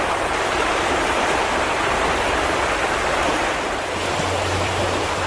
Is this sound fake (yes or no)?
yes